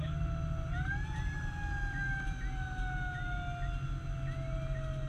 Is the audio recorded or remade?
recorded